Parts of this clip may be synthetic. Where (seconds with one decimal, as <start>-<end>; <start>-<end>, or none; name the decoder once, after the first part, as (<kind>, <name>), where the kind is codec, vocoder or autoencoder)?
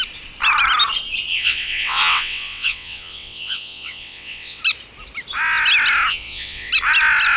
1.3-4.6 (vocoder, WaveNeXt); 6.1-6.7